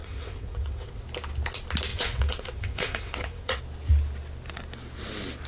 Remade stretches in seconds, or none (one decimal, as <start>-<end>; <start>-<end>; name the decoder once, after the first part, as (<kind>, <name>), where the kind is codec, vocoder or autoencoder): 0.0-1.0 (vocoder, WaveNeXt); 1.9-3.6

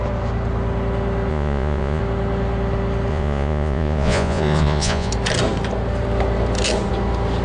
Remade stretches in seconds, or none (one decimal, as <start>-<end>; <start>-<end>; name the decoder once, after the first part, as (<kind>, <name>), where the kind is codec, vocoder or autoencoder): 1.3-2.0 (vocoder, Vocos); 3.1-5.1

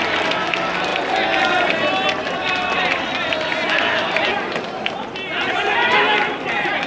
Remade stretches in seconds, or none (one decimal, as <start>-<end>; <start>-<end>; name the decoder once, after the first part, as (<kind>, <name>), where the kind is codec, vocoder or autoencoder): none

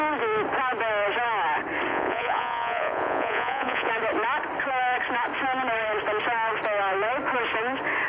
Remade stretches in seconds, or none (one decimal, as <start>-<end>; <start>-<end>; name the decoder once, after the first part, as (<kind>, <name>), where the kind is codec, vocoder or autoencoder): 1.9-3.9 (vocoder, Vocos)

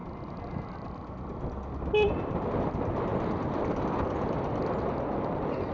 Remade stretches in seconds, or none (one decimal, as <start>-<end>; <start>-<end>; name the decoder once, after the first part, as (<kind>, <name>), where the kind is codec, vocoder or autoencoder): none

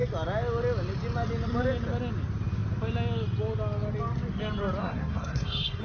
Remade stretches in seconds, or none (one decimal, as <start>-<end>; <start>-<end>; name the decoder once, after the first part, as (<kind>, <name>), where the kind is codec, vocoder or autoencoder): 4.8-5.8 (codec, SNAC)

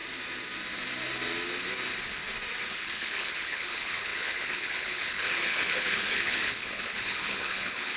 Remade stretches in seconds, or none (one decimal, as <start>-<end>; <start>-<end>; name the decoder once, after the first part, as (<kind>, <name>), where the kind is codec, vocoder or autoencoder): 2.7-8.0 (codec, HILCodec)

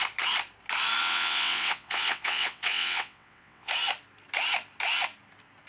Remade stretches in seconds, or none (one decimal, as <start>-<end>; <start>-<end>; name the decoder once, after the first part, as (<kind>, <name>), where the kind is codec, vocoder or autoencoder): 1.0-3.7 (vocoder, WaveNeXt)